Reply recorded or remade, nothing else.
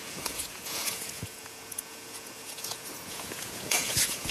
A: remade